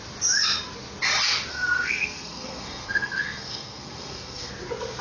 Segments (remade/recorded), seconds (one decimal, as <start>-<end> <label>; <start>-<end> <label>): 0.0-1.5 recorded; 1.5-4.5 remade; 4.5-5.0 recorded